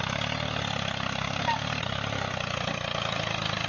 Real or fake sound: real